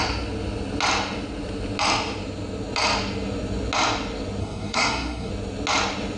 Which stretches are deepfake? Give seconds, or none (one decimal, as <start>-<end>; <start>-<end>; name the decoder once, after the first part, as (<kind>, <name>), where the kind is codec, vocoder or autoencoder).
4.4-5.3 (codec, SNAC)